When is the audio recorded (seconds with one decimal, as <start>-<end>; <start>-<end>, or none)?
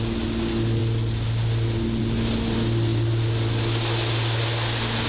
0.0-5.1